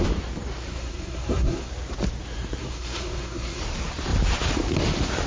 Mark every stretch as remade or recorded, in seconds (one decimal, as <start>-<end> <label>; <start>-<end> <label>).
0.0-0.7 recorded; 0.7-1.7 remade; 1.7-2.6 recorded; 2.6-3.6 remade; 3.6-5.3 recorded